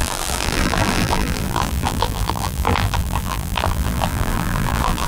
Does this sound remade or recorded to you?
remade